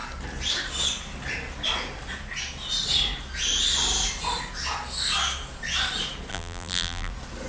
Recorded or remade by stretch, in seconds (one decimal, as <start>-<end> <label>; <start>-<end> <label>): 0.0-6.3 recorded; 6.3-7.1 remade; 7.1-7.5 recorded